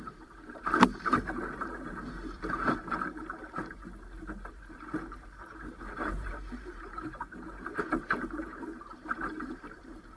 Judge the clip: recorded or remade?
remade